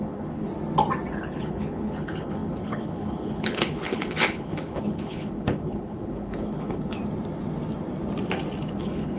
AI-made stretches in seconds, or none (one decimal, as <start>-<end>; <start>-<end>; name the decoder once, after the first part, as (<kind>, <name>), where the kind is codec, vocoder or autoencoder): 0.0-0.5 (codec, HILCodec); 1.1-7.0; 8.6-9.2